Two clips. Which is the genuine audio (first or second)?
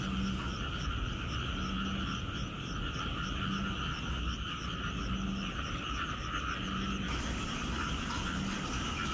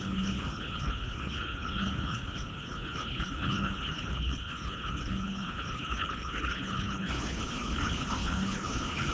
first